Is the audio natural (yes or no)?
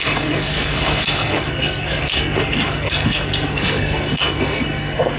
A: no